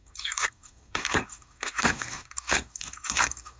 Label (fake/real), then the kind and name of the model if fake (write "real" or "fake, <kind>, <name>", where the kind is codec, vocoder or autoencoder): fake, codec, SNAC